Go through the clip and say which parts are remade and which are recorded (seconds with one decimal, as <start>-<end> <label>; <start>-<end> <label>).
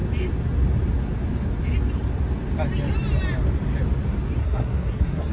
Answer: 0.0-4.4 recorded; 4.4-5.3 remade